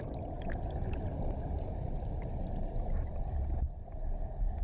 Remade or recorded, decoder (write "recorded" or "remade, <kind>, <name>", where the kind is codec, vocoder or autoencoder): recorded